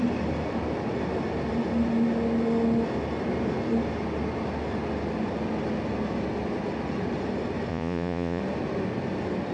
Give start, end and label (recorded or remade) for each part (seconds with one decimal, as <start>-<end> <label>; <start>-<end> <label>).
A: 0.0-7.7 recorded; 7.7-8.4 remade; 8.4-9.5 recorded